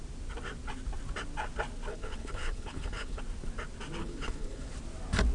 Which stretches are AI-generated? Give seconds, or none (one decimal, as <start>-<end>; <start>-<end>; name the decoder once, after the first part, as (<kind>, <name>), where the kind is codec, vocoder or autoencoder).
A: 1.9-3.2 (codec, HILCodec); 4.0-4.7